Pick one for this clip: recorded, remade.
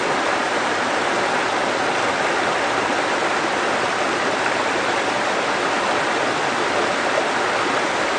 recorded